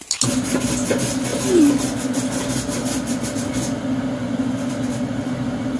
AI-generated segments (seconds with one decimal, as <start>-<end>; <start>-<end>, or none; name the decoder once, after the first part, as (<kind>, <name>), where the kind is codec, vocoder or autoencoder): none